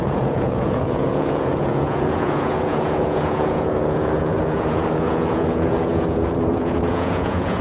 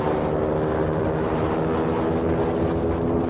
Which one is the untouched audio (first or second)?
second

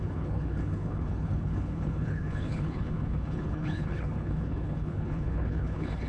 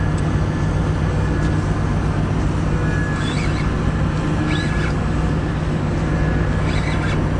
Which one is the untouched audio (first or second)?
second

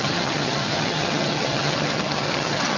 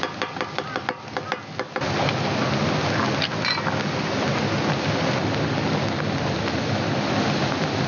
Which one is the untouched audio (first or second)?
second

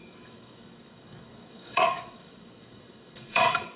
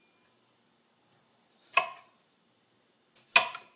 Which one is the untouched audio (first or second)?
second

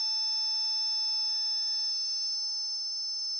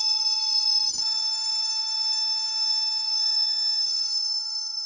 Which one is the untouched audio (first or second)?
first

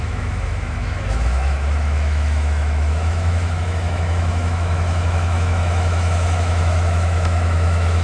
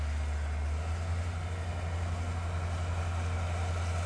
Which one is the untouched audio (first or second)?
second